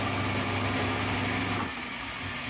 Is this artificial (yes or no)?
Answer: no